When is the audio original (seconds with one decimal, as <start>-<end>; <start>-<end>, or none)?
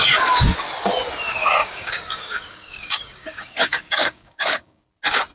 0.0-1.6; 4.8-5.3